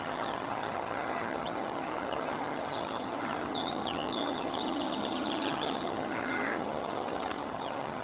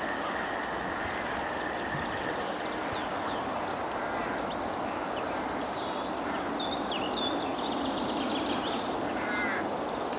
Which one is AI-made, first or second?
first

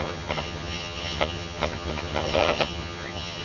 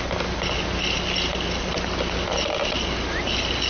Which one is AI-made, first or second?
first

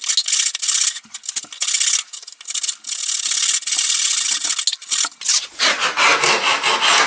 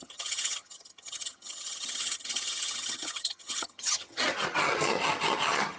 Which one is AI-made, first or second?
second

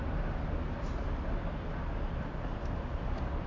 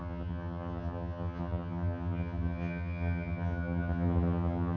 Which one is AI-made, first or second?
second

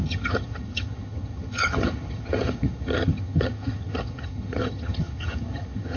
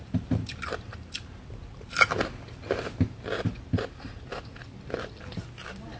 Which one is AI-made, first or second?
first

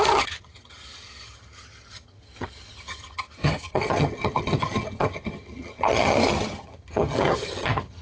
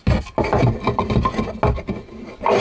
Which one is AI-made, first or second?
first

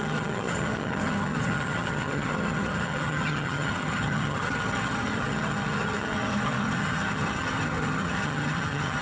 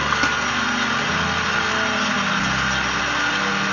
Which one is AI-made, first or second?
first